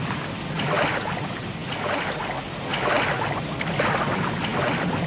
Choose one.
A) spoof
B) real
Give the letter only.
B